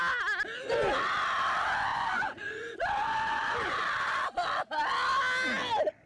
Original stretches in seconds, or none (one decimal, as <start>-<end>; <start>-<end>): 0.0-1.9; 3.8-6.1